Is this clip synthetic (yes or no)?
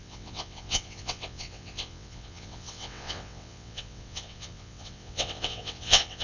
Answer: yes